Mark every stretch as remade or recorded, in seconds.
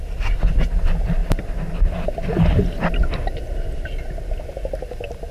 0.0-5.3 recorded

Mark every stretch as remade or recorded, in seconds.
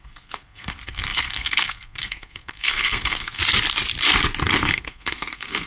0.0-3.4 remade; 3.4-4.6 recorded; 4.6-5.7 remade